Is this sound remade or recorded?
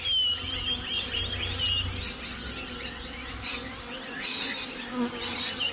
recorded